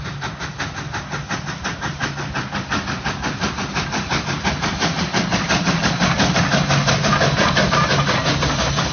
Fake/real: real